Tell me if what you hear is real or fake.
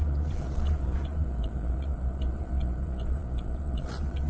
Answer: fake